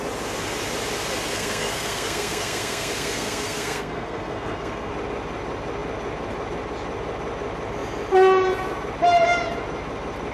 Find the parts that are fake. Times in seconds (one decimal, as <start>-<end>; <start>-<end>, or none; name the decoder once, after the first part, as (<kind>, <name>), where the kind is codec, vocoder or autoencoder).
1.3-4.9 (codec, SNAC)